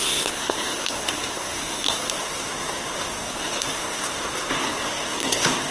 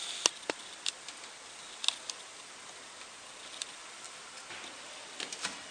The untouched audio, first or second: second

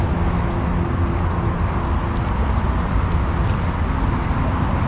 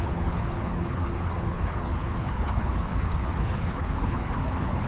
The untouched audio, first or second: first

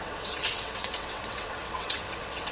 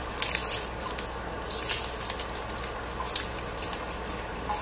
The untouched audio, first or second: second